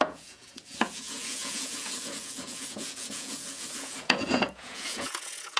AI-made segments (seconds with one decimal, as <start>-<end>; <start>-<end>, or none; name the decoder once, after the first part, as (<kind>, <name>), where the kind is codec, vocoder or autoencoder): 0.0-5.6 (vocoder, Vocos)